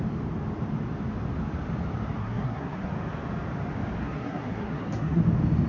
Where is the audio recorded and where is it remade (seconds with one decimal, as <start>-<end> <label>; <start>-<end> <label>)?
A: 0.0-2.2 recorded; 2.2-2.9 remade; 2.9-4.0 recorded; 4.0-5.2 remade; 5.2-5.7 recorded